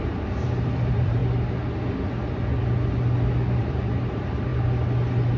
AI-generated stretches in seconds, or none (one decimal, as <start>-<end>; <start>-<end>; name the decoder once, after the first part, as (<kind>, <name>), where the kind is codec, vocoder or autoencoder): 0.0-1.2 (vocoder, BigVGAN v2); 3.6-4.5